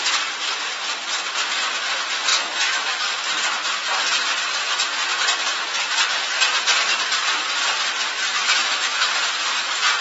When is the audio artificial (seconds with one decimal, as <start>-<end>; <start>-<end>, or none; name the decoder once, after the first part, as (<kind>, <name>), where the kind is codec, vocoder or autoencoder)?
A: 2.3-3.0 (autoencoder, DAC-VAE); 8.3-9.6